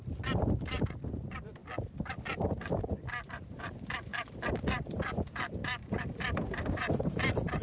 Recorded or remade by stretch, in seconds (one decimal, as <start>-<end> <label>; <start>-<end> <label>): 0.0-1.6 remade; 1.6-3.3 recorded; 3.3-7.6 remade